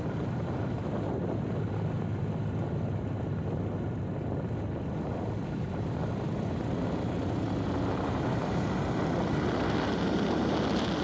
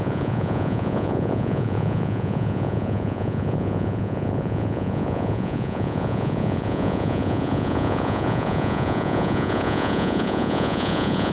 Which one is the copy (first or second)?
second